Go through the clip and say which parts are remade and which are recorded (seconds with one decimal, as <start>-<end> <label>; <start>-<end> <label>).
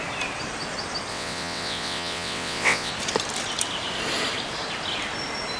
0.0-1.1 recorded; 1.1-2.9 remade; 2.9-5.6 recorded